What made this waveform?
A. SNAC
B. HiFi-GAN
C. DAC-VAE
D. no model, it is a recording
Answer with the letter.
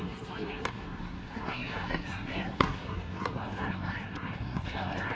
A